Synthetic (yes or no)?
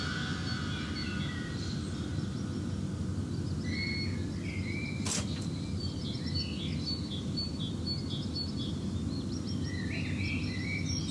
no